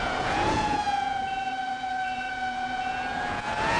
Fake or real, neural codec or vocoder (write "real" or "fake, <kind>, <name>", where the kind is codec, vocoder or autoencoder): fake, vocoder, Vocos